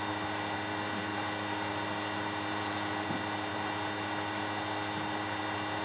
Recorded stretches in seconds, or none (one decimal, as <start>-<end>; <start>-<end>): 0.0-2.5; 3.1-5.8